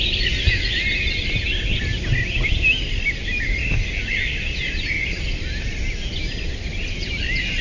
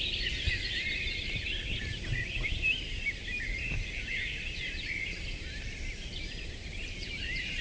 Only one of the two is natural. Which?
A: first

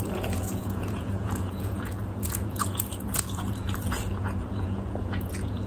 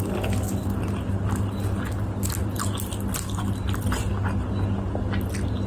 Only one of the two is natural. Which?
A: second